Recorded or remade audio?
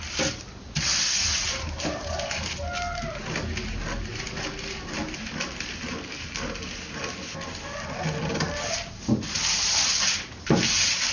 recorded